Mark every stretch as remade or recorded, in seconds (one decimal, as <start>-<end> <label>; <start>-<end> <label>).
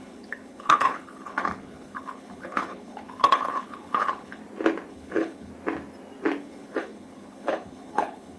0.0-4.4 remade; 4.4-4.9 recorded; 4.9-5.5 remade; 5.5-6.4 recorded; 6.4-8.4 remade